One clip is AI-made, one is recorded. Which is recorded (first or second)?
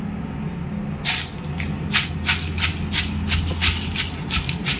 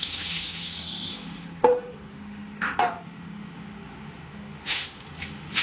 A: first